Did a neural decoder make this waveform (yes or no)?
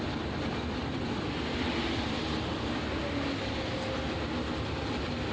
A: no